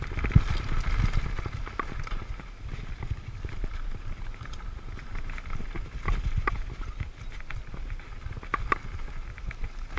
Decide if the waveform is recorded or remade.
recorded